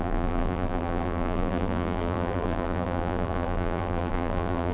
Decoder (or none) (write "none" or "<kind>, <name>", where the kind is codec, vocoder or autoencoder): vocoder, BigVGAN v2